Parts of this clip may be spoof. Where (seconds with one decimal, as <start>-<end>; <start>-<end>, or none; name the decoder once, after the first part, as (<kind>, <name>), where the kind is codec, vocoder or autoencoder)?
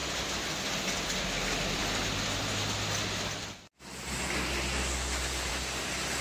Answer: none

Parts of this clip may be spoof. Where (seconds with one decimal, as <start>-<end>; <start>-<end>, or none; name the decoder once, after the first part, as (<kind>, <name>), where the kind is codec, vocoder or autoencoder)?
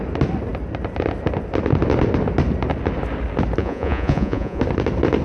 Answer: 3.6-4.6 (vocoder, Vocos)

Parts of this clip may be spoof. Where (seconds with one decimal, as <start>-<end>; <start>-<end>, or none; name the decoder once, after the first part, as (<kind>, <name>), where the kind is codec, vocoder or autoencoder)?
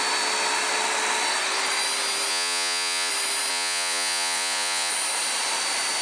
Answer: 2.3-3.1 (vocoder, Vocos); 3.5-4.9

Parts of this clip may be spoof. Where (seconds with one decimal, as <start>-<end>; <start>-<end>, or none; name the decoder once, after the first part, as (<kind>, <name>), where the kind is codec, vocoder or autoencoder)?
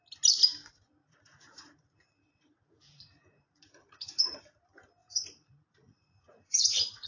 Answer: 1.0-4.4 (vocoder, Vocos); 5.0-7.1